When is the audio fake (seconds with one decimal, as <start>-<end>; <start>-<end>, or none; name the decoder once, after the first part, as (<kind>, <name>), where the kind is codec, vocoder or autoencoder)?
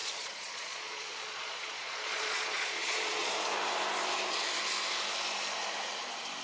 0.0-3.3 (vocoder, Vocos)